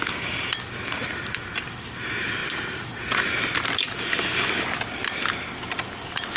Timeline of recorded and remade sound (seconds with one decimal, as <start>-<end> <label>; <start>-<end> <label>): 0.0-6.4 recorded